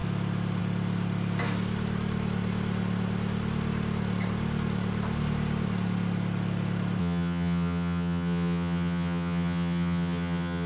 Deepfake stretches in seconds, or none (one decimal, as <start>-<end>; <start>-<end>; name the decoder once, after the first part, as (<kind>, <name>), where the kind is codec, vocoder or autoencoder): 7.0-10.7 (vocoder, HiFi-GAN)